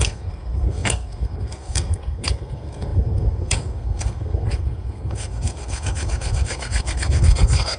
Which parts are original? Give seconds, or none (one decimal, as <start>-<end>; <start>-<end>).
none